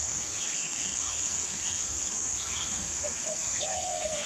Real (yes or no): no